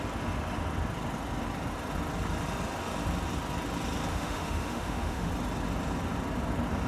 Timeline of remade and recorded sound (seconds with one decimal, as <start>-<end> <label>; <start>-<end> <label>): 0.0-4.1 recorded; 4.1-5.3 remade; 5.3-6.9 recorded